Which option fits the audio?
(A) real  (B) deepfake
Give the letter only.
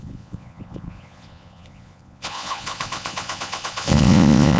B